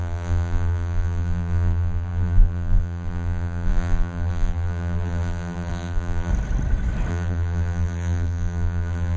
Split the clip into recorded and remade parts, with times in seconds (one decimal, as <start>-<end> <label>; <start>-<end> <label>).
0.0-6.3 remade; 6.3-7.1 recorded; 7.1-9.2 remade